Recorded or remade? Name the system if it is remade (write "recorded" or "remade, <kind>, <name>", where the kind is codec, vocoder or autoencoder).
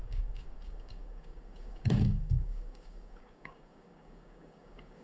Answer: remade, codec, DAC